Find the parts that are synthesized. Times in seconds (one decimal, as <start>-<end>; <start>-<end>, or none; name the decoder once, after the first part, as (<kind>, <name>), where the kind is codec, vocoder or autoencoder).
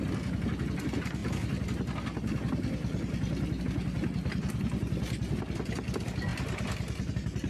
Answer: none